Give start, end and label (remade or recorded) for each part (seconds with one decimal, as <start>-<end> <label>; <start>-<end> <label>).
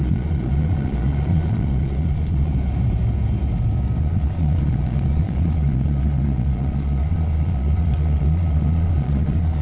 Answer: 0.0-2.5 remade; 2.5-4.0 recorded; 4.0-9.6 remade